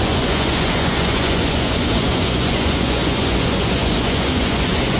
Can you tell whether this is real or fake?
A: fake